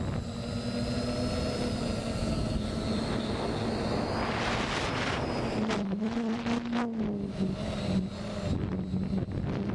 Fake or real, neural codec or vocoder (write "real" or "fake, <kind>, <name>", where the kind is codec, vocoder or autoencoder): real